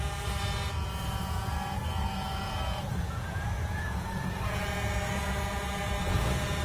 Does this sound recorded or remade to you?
remade